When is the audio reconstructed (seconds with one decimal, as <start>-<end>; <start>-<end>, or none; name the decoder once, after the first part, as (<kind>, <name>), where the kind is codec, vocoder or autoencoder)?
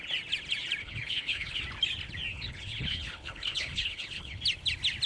0.8-1.6 (codec, HILCodec); 2.3-4.4